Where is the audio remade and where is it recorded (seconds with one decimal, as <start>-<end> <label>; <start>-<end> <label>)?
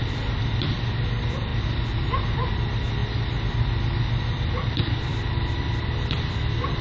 0.0-3.0 recorded; 3.0-3.5 remade; 3.5-6.8 recorded